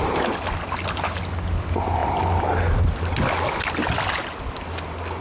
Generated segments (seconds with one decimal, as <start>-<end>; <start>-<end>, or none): none